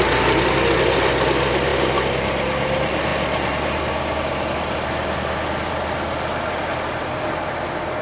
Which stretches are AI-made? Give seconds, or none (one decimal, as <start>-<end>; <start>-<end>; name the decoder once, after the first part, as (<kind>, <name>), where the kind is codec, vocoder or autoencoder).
none